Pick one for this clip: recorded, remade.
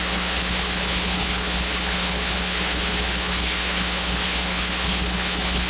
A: remade